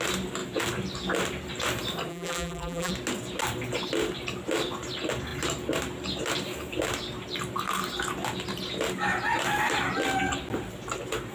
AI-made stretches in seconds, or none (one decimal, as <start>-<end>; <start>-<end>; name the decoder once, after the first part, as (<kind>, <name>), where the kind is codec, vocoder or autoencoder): 2.1-2.9 (vocoder, BigVGAN v2)